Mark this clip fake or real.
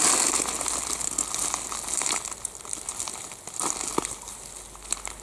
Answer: real